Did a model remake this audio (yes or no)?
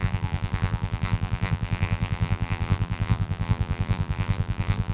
yes